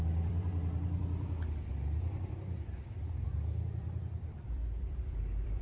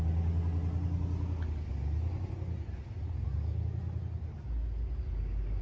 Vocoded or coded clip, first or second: first